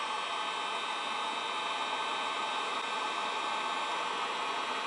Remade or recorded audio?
recorded